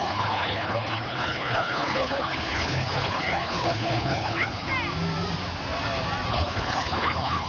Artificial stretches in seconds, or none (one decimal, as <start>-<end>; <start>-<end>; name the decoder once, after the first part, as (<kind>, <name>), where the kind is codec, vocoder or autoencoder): 0.0-4.7 (codec, HILCodec); 6.3-7.5